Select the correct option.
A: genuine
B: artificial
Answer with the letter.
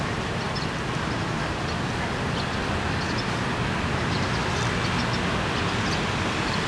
A